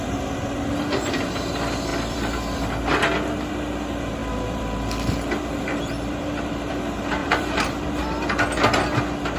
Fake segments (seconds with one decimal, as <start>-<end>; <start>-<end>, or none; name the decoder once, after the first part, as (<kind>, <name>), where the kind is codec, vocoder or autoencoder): 4.2-6.8 (vocoder, BigVGAN v2); 7.2-7.9

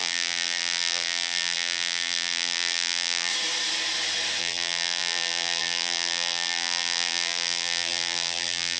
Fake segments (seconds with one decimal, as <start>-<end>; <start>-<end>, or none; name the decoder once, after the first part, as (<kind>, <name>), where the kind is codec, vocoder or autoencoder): 0.0-3.3 (vocoder, BigVGAN v2); 4.4-8.8